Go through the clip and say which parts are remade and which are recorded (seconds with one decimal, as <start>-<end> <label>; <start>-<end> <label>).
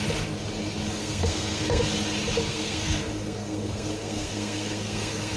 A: 0.0-1.0 recorded; 1.0-1.8 remade; 1.8-2.5 recorded; 2.5-5.4 remade